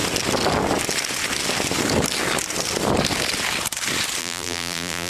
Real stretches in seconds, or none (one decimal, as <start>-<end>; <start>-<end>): 0.0-4.2